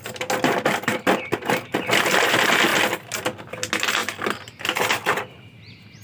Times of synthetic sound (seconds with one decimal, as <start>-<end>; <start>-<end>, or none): none